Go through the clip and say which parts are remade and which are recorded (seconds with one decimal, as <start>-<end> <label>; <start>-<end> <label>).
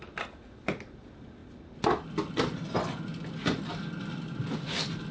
0.0-5.1 recorded